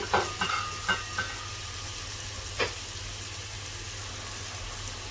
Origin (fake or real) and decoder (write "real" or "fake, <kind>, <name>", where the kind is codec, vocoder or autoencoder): real